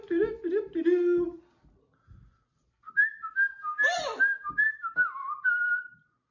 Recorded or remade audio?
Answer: recorded